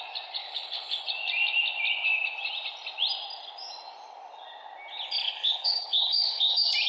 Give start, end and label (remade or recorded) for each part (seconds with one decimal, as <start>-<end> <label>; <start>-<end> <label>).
0.0-0.4 recorded; 0.4-1.0 remade; 1.0-5.2 recorded; 5.2-6.5 remade; 6.5-6.9 recorded